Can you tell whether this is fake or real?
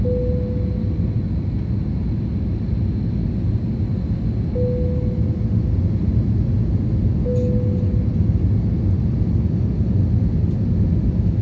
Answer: real